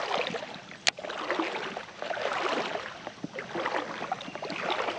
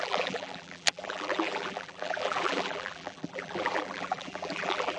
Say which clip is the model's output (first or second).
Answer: second